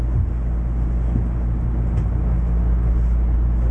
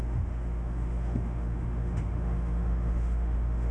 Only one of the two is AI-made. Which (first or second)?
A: second